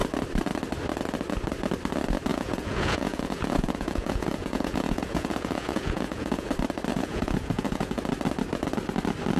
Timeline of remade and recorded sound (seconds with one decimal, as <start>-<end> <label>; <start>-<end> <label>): 0.0-2.3 recorded; 2.3-6.5 remade; 6.5-6.9 recorded; 6.9-8.0 remade; 8.0-9.4 recorded